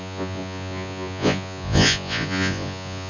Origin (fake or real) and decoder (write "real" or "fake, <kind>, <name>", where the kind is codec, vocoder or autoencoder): fake, vocoder, Vocos